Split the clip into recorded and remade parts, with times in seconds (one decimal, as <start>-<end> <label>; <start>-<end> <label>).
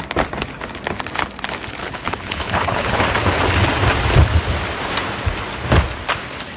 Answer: 0.0-1.8 recorded; 1.8-3.0 remade; 3.0-6.6 recorded